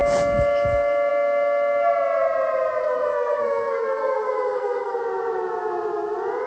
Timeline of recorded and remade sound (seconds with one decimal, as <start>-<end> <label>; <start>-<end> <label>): 0.0-2.8 recorded; 2.8-5.0 remade; 5.0-6.5 recorded